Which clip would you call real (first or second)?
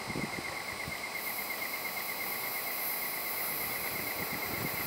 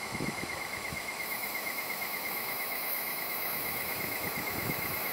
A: first